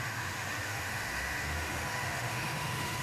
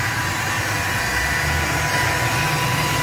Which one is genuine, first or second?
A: second